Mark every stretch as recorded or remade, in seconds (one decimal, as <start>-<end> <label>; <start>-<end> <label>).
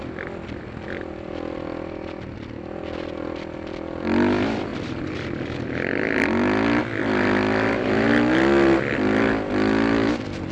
0.0-10.5 recorded